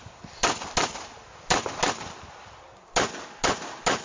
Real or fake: real